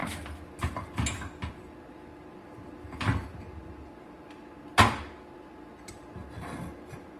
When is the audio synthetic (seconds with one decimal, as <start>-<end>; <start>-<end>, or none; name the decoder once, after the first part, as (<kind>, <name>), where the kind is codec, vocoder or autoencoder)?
none